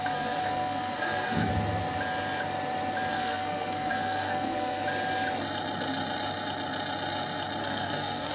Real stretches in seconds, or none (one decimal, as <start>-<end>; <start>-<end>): 1.5-3.1; 4.8-7.6